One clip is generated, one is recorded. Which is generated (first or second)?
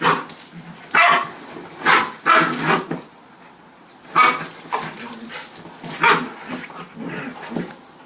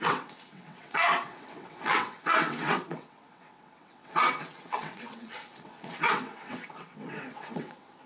second